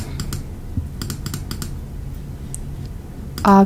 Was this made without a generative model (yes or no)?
yes